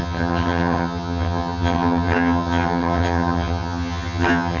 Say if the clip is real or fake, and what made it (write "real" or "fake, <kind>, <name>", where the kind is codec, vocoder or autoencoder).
fake, vocoder, HiFi-GAN